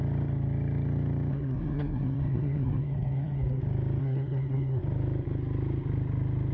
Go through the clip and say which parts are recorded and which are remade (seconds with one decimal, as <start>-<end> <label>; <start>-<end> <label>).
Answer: 0.0-1.3 recorded; 1.3-3.6 remade; 3.6-4.0 recorded; 4.0-4.8 remade; 4.8-6.5 recorded